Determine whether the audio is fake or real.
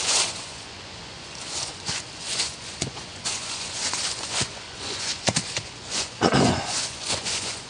fake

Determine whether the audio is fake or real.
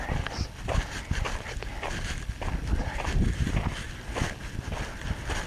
real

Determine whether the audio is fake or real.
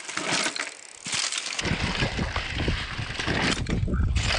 real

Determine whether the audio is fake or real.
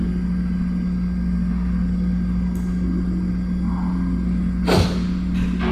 real